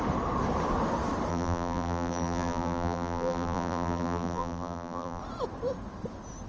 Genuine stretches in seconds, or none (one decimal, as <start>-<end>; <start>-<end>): 0.0-1.3; 5.2-6.5